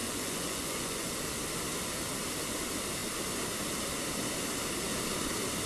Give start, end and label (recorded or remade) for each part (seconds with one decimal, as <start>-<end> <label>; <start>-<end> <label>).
0.0-1.1 remade; 1.1-5.7 recorded